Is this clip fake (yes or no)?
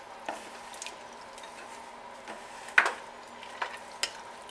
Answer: no